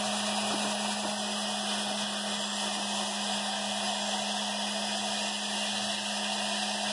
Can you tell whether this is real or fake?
real